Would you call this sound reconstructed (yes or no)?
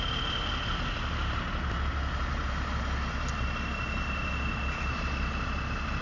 no